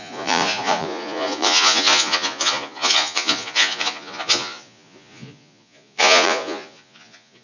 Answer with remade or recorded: remade